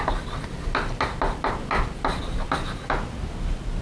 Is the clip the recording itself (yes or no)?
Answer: yes